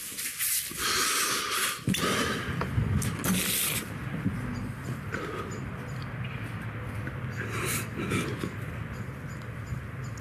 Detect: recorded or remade recorded